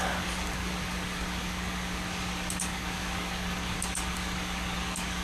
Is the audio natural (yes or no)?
no